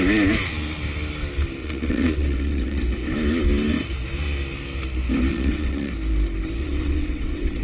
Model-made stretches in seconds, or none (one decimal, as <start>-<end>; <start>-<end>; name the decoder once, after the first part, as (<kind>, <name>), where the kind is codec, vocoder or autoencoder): 1.6-2.8 (vocoder, WaveNeXt); 5.3-5.9; 6.6-7.6

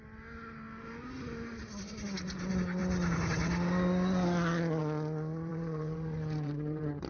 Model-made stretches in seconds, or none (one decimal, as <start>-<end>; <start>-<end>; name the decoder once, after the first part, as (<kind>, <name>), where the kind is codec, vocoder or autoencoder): 5.5-7.1 (vocoder, BigVGAN v2)